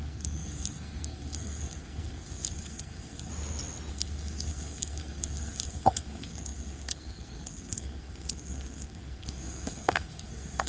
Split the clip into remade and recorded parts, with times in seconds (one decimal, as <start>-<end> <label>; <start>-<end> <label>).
0.0-3.3 remade; 3.3-3.9 recorded; 3.9-10.7 remade